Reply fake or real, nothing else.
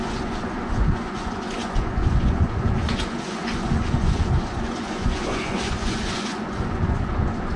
fake